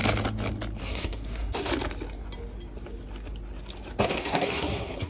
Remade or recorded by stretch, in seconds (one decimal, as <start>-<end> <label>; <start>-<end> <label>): 0.0-0.8 recorded; 0.8-1.7 remade; 1.7-4.0 recorded; 4.0-5.1 remade